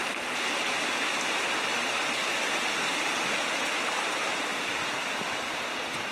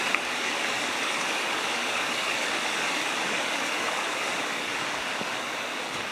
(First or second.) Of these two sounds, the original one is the first